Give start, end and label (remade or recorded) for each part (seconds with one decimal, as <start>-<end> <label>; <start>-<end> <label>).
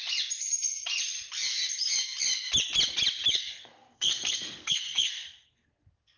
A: 0.0-3.3 recorded; 3.3-6.2 remade